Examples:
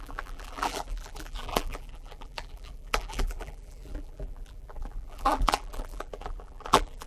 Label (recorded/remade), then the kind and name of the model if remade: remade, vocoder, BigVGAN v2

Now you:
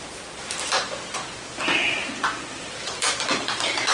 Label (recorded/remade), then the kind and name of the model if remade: remade, vocoder, BigVGAN v2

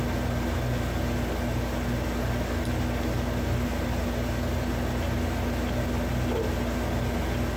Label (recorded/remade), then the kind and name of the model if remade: recorded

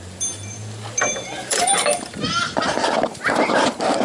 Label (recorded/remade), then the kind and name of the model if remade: remade, vocoder, BigVGAN v2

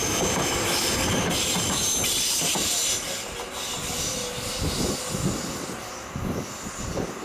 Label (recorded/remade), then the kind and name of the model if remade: recorded